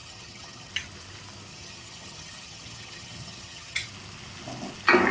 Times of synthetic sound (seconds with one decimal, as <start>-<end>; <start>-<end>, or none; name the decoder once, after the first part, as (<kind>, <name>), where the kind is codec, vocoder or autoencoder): 0.0-0.7 (vocoder, HiFi-GAN); 1.5-3.9